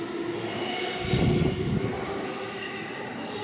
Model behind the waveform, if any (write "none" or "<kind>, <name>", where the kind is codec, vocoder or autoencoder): none